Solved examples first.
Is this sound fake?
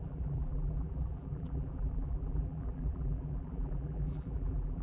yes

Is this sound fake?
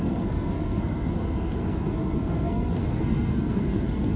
yes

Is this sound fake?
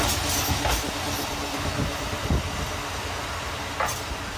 no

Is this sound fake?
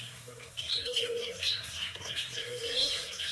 yes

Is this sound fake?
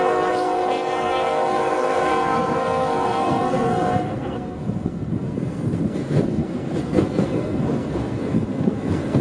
yes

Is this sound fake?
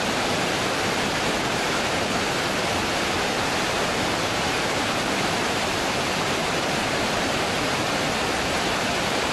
yes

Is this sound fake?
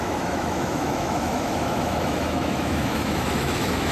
yes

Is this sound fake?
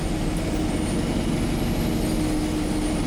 no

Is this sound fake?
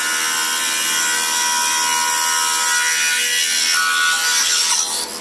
no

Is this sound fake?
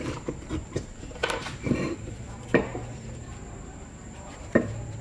yes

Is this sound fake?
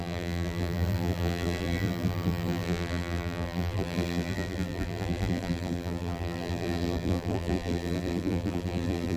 yes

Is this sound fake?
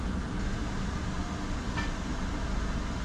no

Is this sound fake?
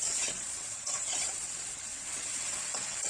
yes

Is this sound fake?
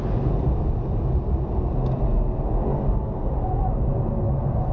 no